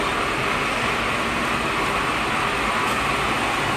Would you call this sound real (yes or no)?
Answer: yes